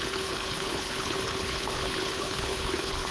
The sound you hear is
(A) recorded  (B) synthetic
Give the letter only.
B